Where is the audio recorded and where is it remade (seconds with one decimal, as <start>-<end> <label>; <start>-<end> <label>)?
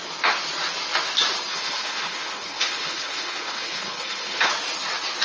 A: 0.0-1.5 recorded; 1.5-4.5 remade; 4.5-5.2 recorded